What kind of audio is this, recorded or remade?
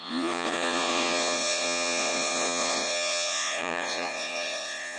remade